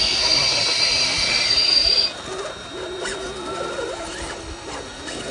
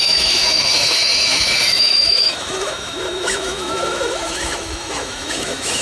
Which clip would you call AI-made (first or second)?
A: second